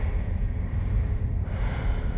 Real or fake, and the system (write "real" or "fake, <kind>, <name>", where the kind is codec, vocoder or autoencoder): real